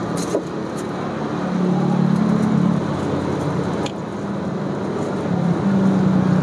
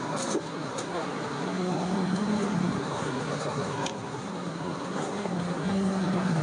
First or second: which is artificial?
second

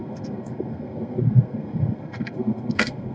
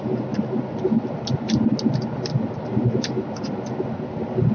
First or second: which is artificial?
first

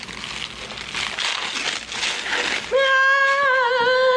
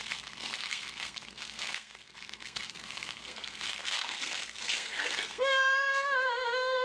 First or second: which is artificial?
second